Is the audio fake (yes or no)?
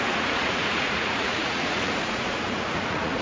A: yes